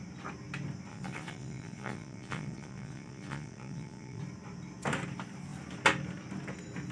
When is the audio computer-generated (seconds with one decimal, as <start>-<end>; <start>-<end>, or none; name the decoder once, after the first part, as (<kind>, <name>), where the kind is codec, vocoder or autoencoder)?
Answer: 0.9-4.2 (vocoder, Vocos)